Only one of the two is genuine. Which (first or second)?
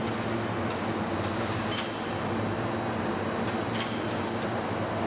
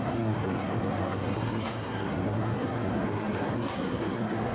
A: first